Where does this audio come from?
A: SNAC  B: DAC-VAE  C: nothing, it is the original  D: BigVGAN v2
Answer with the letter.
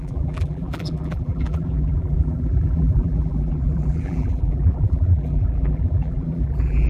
D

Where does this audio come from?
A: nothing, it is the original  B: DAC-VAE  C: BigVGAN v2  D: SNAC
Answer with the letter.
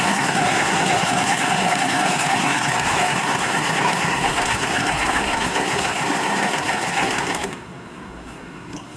D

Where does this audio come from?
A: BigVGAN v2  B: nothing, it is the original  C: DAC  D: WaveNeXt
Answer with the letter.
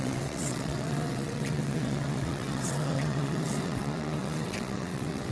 D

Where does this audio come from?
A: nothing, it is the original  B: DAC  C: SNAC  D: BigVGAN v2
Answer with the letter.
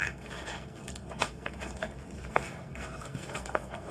C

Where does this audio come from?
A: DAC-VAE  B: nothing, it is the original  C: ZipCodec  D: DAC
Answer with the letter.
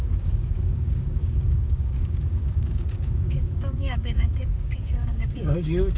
D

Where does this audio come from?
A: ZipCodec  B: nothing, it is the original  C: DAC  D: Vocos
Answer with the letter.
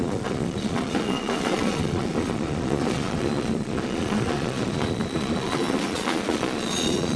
D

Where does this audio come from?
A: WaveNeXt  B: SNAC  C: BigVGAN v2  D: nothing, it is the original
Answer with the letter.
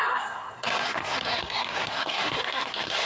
B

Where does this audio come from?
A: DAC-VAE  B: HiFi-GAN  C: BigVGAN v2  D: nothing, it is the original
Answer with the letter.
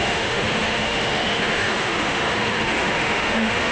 A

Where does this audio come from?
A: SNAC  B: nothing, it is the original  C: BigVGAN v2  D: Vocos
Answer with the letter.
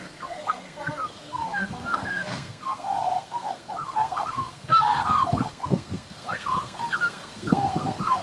A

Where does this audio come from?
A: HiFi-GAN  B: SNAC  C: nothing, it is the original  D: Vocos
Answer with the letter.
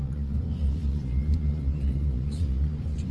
D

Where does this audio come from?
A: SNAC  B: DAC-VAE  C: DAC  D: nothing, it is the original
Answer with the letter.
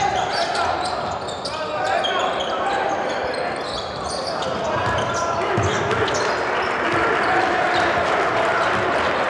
D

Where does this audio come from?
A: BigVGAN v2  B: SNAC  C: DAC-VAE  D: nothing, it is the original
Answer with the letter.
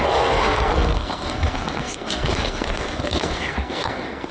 B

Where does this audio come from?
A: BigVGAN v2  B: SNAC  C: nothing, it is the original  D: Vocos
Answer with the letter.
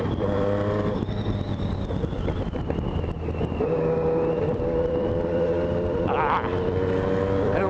C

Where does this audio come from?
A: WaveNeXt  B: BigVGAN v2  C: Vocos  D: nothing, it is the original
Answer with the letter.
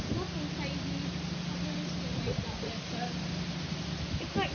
D